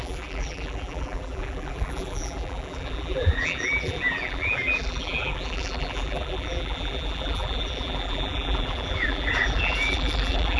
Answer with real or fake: fake